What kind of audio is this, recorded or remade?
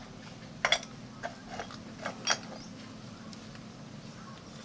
recorded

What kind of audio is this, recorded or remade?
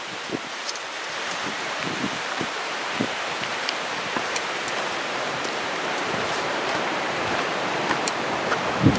remade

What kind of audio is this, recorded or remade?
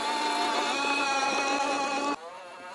recorded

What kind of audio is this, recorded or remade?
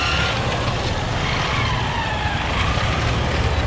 recorded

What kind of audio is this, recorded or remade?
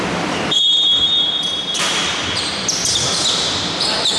recorded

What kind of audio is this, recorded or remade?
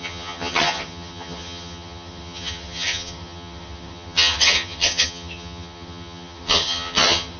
remade